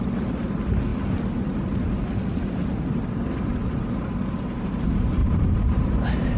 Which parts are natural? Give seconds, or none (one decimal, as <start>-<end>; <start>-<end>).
0.0-5.2